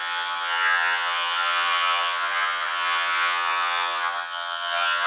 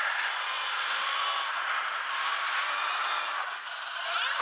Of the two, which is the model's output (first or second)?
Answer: first